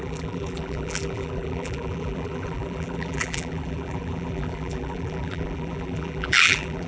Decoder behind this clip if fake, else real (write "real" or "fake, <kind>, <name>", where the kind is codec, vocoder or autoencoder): fake, vocoder, BigVGAN v2